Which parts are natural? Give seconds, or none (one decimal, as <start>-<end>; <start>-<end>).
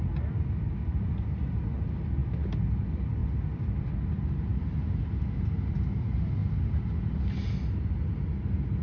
0.0-8.8